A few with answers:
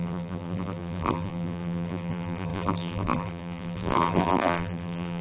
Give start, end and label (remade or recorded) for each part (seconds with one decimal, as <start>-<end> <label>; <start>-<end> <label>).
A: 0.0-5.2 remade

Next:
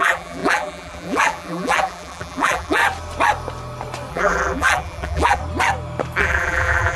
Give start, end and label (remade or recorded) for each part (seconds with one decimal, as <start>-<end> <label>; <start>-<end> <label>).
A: 0.0-2.8 remade; 2.8-4.1 recorded; 4.1-5.4 remade; 5.4-6.2 recorded; 6.2-7.0 remade

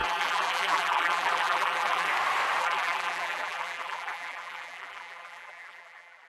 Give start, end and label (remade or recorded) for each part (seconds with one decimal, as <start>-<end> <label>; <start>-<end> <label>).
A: 0.0-2.1 remade; 2.1-2.6 recorded; 2.6-6.3 remade

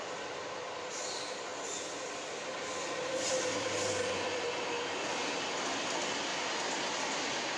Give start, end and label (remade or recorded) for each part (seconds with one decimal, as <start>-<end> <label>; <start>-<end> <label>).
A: 0.0-1.5 remade; 1.5-2.9 recorded; 2.9-6.3 remade; 6.3-7.6 recorded